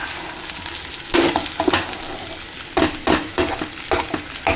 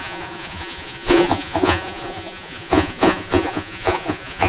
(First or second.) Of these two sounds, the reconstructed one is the second